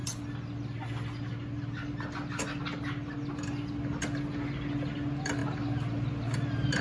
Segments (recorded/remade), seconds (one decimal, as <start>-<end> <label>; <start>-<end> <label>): 0.0-6.8 recorded